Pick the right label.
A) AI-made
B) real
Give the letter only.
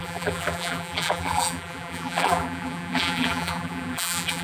A